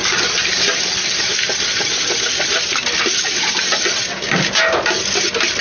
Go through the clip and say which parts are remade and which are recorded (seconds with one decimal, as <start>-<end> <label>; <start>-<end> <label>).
0.0-5.6 recorded